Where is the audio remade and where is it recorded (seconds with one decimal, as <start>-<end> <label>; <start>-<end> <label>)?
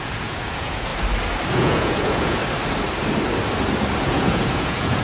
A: 0.0-0.9 remade; 0.9-1.5 recorded; 1.5-2.4 remade; 2.4-4.0 recorded; 4.0-5.0 remade